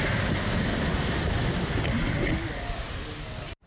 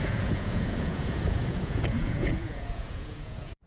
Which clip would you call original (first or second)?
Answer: first